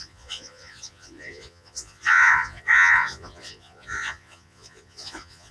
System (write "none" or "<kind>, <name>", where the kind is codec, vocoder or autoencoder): vocoder, Vocos